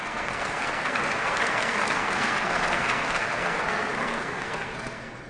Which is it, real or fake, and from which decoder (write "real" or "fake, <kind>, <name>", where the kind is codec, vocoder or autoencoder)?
fake, codec, SNAC